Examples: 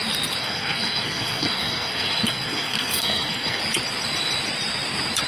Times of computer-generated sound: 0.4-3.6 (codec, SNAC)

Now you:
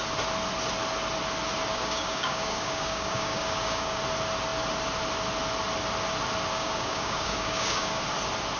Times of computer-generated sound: 1.7-4.0 (codec, DAC); 6.5-8.0

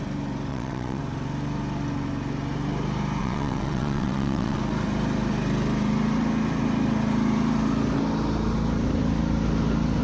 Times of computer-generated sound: 0.5-1.0 (vocoder, WaveNeXt); 3.2-4.6

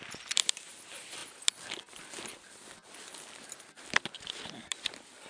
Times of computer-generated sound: none

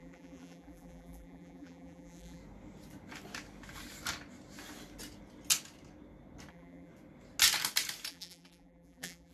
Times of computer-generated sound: 0.0-2.4 (vocoder, BigVGAN v2); 6.5-6.9; 8.1-9.3

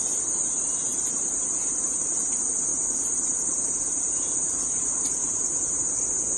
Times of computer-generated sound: 0.0-6.4 (vocoder, BigVGAN v2)

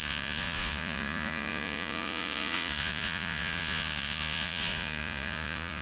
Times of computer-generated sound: 0.0-5.8 (vocoder, Vocos)

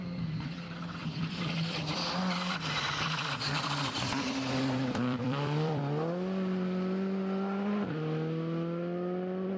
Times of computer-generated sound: 1.0-5.8 (vocoder, BigVGAN v2)